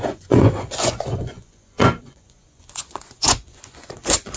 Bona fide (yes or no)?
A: no